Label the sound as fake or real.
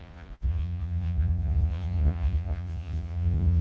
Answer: fake